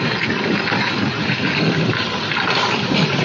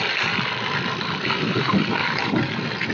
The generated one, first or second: first